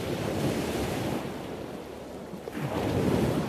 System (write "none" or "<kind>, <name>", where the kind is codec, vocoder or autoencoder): none